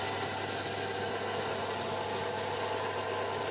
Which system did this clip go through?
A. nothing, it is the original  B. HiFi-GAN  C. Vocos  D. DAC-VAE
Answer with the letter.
A